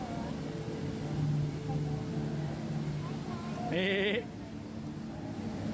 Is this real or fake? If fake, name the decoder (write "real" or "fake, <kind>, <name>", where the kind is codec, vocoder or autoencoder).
real